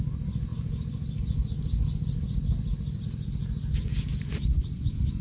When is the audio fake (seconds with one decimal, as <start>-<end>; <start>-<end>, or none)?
none